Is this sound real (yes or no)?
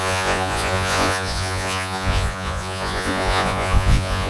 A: no